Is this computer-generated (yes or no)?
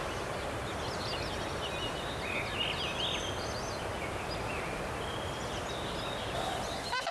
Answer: no